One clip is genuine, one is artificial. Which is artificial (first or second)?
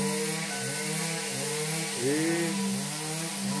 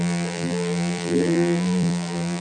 second